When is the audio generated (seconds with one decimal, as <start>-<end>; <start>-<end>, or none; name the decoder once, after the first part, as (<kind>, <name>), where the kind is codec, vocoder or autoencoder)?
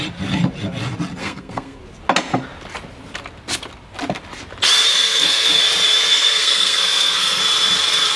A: 1.2-1.8 (codec, SNAC); 4.9-5.6; 6.1-7.4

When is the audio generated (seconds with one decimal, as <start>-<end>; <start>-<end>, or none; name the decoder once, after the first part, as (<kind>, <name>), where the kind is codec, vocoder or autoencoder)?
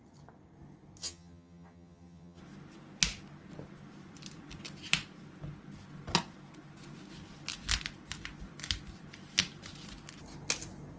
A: 1.0-2.4 (vocoder, HiFi-GAN)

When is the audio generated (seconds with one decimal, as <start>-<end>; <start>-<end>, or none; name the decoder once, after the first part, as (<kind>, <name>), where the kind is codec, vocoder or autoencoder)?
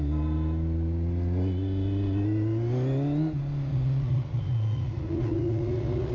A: 3.7-6.1 (vocoder, Vocos)